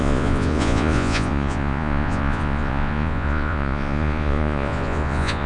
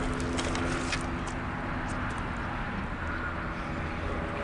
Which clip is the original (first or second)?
second